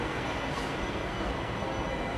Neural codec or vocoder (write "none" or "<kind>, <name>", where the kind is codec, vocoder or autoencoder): codec, SNAC